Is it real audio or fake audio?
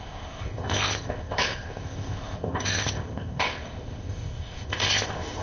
fake